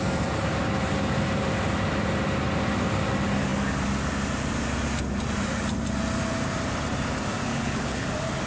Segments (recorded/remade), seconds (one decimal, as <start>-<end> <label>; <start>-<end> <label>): 0.0-7.5 recorded; 7.5-8.1 remade; 8.1-8.5 recorded